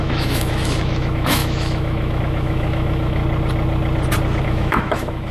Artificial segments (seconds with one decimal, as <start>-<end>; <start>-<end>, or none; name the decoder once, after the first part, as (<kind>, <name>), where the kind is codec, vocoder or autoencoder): 0.0-3.2 (autoencoder, DAC-VAE); 4.4-5.3